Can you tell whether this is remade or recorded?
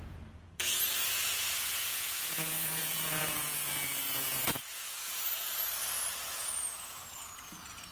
remade